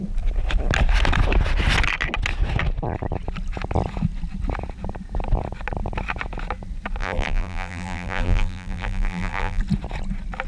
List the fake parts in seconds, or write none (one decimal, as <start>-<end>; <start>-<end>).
7.0-9.6

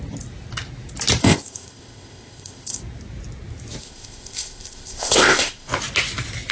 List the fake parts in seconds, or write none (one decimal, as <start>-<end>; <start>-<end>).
1.2-2.8; 3.8-5.7

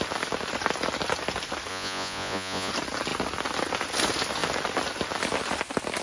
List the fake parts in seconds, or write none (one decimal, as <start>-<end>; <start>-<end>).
1.7-2.7

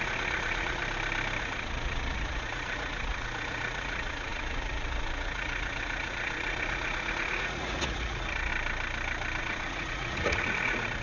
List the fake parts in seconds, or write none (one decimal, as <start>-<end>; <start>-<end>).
0.0-0.8; 1.4-8.5; 9.4-11.0

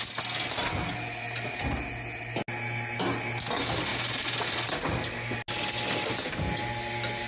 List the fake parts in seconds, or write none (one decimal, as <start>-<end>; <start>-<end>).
none

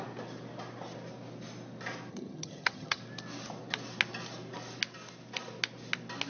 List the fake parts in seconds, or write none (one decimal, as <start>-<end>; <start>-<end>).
2.1-3.0

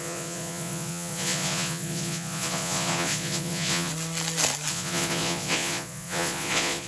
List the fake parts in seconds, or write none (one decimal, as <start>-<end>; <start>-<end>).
0.0-3.9; 4.7-6.9